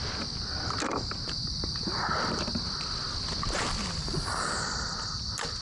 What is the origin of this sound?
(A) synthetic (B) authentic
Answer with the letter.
B